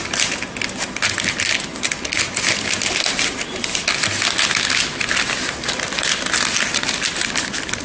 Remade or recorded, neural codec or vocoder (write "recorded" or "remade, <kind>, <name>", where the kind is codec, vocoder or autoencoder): recorded